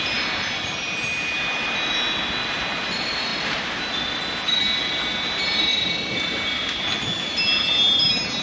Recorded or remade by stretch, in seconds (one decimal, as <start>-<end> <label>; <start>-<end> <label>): 0.0-8.4 recorded

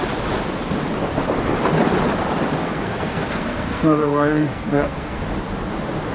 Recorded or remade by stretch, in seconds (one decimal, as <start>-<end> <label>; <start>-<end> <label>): 0.0-2.6 recorded; 2.6-5.2 remade; 5.2-6.1 recorded

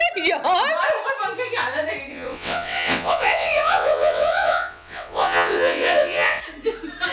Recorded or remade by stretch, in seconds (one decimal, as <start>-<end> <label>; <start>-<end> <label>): 0.0-2.1 recorded; 2.1-6.4 remade; 6.4-7.1 recorded

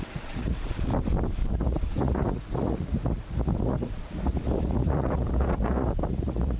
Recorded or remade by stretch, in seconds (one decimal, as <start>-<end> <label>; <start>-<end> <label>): 0.0-0.9 remade; 0.9-1.5 recorded; 1.5-6.6 remade

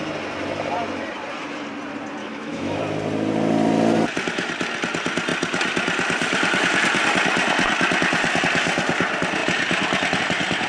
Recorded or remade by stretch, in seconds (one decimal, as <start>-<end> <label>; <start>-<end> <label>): 0.0-2.2 recorded; 2.2-2.8 remade; 2.8-10.7 recorded

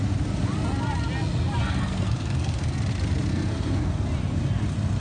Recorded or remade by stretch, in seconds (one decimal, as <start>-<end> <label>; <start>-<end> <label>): 0.0-1.6 recorded; 1.6-2.8 remade; 2.8-3.3 recorded; 3.3-3.9 remade; 3.9-5.0 recorded

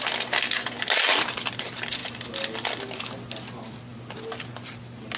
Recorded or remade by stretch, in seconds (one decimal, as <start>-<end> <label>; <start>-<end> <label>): 0.0-5.2 recorded